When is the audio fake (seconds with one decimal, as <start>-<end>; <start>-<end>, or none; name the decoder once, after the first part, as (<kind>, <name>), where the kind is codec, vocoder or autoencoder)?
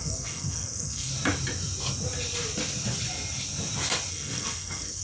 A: 0.0-1.1 (codec, SNAC); 4.1-5.0